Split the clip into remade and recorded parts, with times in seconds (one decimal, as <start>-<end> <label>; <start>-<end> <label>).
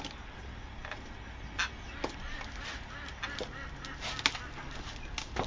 0.0-5.5 recorded